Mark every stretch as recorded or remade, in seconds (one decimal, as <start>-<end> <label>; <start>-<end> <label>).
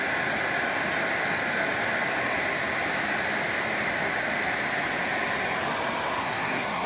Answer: 0.0-6.2 recorded; 6.2-6.9 remade